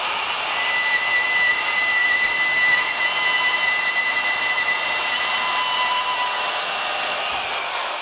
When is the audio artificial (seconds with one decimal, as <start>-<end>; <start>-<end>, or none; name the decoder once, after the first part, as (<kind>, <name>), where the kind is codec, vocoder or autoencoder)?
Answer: none